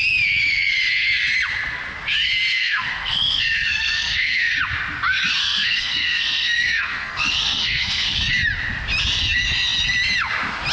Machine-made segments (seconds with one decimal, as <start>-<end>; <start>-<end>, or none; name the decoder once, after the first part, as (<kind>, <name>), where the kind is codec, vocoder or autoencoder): 2.5-4.5 (codec, SNAC); 5.4-8.2